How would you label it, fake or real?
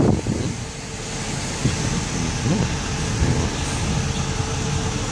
real